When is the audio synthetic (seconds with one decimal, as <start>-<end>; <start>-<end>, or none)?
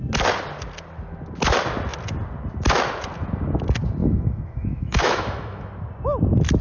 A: 4.0-5.7